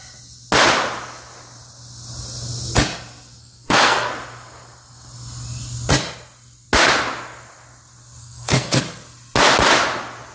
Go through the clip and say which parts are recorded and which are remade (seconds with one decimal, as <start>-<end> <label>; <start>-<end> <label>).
0.0-3.4 recorded; 3.4-4.1 remade; 4.1-8.2 recorded; 8.2-8.8 remade; 8.8-10.3 recorded